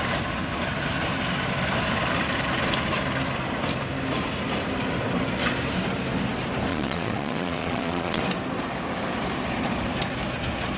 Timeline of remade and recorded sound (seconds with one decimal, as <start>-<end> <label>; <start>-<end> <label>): 0.0-6.7 recorded; 6.7-8.2 remade; 8.2-10.8 recorded